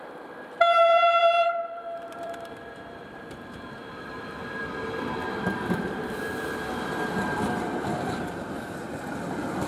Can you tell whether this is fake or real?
fake